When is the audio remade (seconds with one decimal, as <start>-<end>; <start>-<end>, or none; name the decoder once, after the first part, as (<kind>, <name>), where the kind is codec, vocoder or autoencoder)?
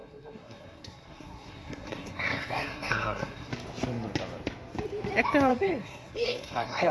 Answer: 0.0-3.5 (codec, SNAC); 5.5-6.9